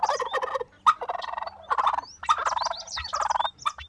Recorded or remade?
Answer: recorded